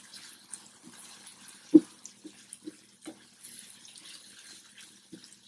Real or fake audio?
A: real